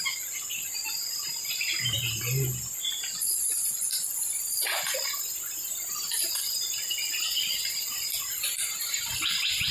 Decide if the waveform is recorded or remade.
remade